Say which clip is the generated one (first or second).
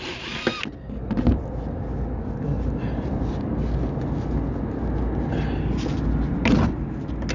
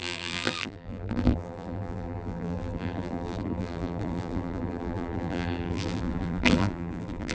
second